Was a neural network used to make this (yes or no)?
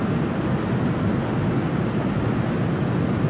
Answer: no